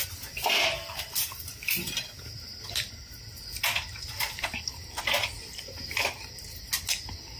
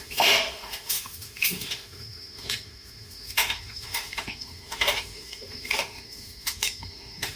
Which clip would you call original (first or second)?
first